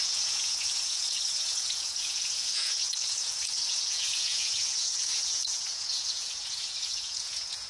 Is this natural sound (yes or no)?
no